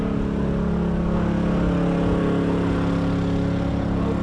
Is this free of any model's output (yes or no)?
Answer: yes